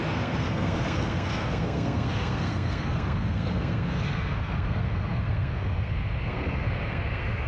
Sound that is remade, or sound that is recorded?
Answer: remade